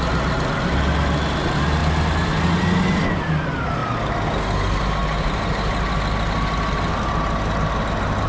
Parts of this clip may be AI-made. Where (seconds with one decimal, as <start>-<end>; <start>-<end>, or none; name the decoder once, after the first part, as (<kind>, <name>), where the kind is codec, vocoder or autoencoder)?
none

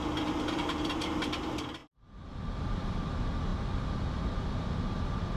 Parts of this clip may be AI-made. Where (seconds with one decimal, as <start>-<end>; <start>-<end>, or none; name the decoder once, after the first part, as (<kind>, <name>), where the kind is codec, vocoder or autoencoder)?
1.8-3.1 (vocoder, BigVGAN v2)